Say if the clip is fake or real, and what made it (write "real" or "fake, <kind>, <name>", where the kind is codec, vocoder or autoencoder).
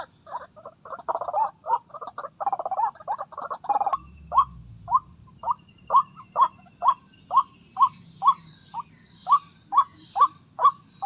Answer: real